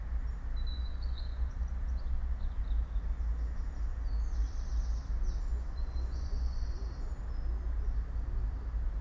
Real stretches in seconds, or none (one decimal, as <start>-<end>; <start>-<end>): 0.0-0.7; 2.6-5.5; 6.8-9.0